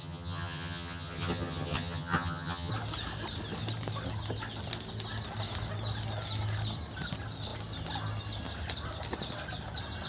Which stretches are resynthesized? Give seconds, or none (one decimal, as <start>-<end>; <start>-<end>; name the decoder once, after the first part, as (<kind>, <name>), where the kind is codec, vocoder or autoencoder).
0.0-2.7 (vocoder, HiFi-GAN)